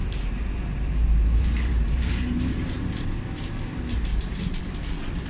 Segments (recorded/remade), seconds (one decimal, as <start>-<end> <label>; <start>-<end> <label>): 0.0-3.2 remade; 3.2-4.1 recorded; 4.1-4.6 remade; 4.6-5.3 recorded